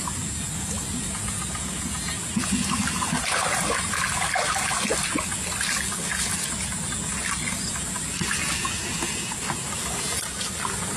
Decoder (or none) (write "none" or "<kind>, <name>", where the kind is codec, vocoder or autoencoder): none